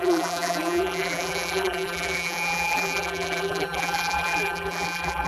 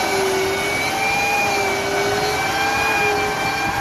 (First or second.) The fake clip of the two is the first